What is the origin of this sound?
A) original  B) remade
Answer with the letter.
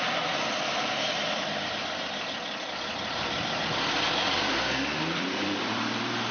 B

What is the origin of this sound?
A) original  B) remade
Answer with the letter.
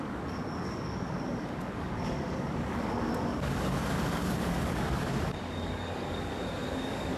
B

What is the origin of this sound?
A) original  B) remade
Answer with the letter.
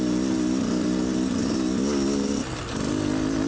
A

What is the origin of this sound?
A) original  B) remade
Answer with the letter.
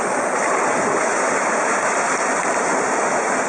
A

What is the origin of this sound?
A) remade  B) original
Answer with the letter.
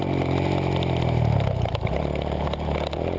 B